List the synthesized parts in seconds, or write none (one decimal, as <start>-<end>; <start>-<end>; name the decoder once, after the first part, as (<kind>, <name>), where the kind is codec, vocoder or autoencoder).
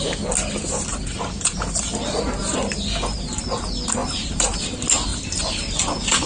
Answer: 0.9-2.7 (vocoder, BigVGAN v2); 4.0-4.6; 5.1-5.6